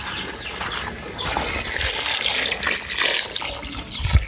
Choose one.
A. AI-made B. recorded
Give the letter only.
B